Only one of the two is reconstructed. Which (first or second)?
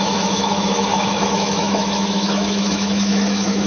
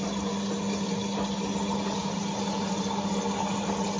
first